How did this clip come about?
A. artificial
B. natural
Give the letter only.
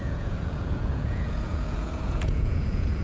A